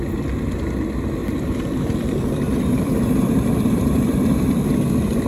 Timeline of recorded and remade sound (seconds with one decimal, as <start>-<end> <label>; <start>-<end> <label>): 0.0-1.2 recorded; 1.2-4.4 remade; 4.4-5.3 recorded